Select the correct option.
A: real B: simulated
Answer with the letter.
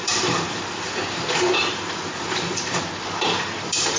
B